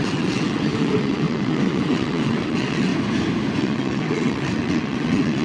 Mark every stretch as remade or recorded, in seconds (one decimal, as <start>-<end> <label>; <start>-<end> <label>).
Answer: 0.0-2.9 remade; 2.9-3.6 recorded; 3.6-5.4 remade